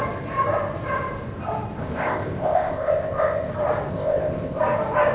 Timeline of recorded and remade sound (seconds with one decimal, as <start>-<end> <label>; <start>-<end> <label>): 0.0-1.8 recorded; 1.8-3.5 remade; 3.5-3.9 recorded; 3.9-4.6 remade; 4.6-5.1 recorded